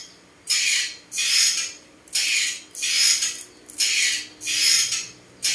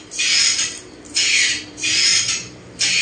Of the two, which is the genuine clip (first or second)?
first